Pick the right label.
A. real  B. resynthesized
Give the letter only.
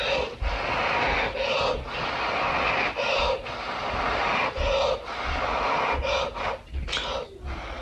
A